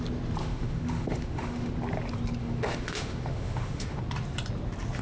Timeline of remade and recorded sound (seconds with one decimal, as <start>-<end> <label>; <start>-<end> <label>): 0.0-0.4 recorded; 0.4-1.7 remade; 1.7-2.4 recorded; 2.4-4.0 remade; 4.0-5.0 recorded